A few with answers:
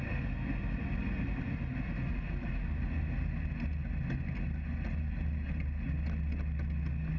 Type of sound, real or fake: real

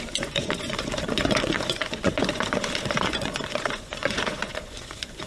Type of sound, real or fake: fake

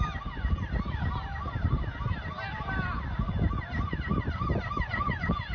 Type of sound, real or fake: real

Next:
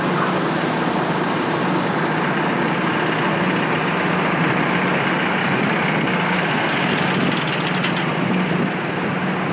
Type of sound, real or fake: real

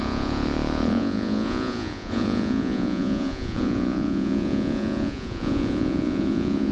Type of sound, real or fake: fake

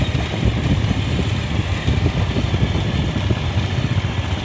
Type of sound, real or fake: real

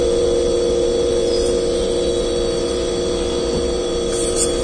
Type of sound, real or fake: fake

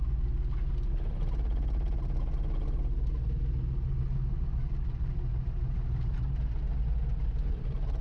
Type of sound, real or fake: real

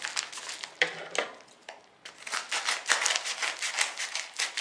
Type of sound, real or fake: real